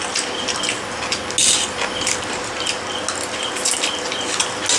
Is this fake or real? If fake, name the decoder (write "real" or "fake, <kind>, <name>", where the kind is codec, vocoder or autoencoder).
real